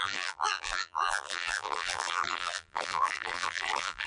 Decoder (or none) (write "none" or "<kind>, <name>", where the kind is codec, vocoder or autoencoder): vocoder, BigVGAN v2